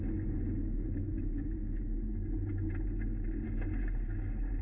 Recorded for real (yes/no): yes